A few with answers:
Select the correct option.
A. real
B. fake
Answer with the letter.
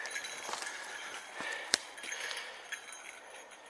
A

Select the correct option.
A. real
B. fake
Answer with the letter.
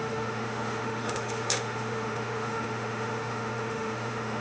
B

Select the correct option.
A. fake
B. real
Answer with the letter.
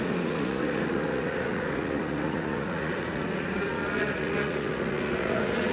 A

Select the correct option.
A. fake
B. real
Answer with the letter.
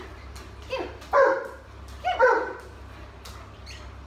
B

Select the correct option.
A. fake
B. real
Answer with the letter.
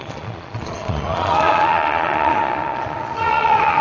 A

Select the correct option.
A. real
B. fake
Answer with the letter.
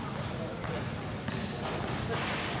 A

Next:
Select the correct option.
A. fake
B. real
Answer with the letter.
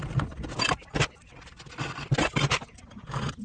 B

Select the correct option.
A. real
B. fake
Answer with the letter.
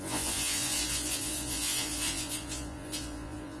B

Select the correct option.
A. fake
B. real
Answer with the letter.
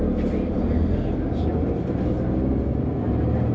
B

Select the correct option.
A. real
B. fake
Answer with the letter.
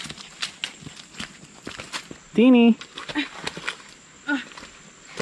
A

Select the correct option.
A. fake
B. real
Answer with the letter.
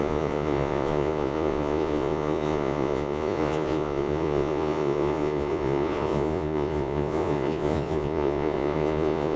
A